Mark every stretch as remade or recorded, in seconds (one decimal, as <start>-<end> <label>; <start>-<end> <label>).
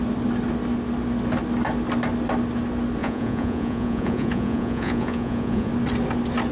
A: 0.0-3.0 recorded; 3.0-5.7 remade; 5.7-6.5 recorded